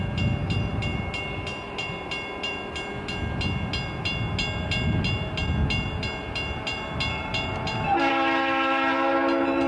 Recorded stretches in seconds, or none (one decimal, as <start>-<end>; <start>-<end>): 0.0-9.7